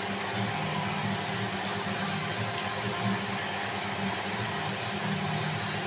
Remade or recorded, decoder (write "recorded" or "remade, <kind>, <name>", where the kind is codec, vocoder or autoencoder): recorded